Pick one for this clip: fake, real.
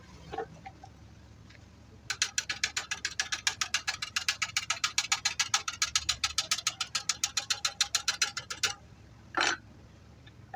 real